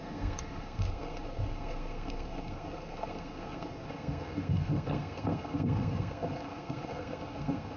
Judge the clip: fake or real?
fake